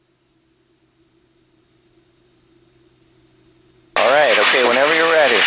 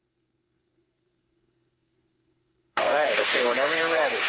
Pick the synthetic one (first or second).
second